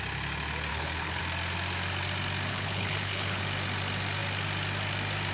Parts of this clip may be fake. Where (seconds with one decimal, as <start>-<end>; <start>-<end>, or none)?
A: 0.7-1.2; 2.5-3.4